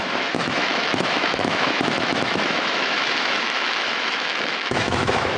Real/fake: fake